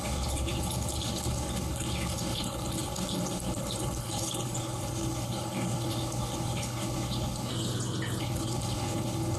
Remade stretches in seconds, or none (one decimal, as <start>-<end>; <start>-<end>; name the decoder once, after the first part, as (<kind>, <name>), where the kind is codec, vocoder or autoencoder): 0.0-7.5 (codec, HILCodec); 8.2-9.4